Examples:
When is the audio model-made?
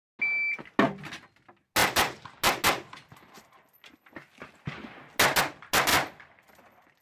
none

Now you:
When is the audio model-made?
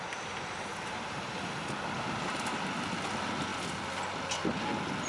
0.7-1.4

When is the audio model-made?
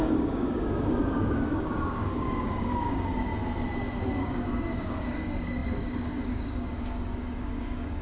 0.0-3.3; 4.2-8.0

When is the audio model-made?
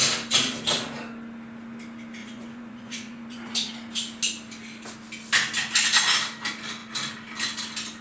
2.2-3.7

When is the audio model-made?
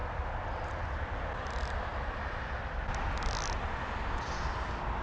none